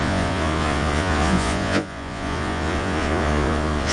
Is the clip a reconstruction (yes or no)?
yes